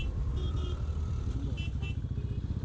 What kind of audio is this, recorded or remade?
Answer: recorded